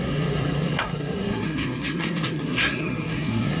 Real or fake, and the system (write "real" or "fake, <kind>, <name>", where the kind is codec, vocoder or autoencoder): fake, codec, SNAC